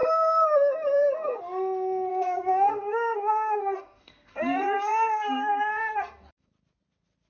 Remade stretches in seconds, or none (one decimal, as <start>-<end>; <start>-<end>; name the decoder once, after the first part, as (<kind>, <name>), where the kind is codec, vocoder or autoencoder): 0.0-1.4 (codec, SNAC); 2.1-6.5

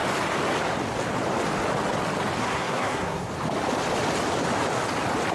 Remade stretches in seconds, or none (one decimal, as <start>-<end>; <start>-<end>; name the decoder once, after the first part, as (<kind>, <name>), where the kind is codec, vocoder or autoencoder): 2.4-3.3 (codec, SNAC)

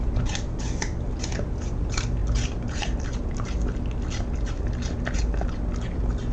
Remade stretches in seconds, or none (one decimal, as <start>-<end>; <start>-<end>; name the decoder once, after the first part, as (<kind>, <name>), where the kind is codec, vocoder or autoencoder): none

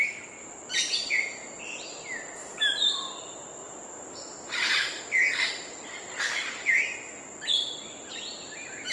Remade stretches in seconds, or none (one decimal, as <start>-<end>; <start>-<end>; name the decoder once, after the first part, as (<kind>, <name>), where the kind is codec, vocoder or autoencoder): 2.4-3.1 (vocoder, BigVGAN v2); 3.6-5.0

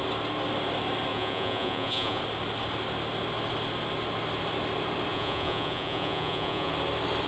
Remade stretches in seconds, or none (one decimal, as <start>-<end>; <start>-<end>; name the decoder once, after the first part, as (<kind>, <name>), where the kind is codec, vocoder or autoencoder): 1.1-2.2 (vocoder, Vocos); 5.1-6.7

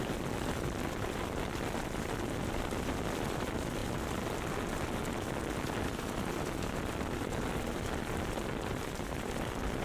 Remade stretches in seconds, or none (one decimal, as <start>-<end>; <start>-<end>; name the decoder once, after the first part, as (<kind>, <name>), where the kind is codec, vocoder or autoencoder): 0.0-3.8 (vocoder, BigVGAN v2); 6.2-9.8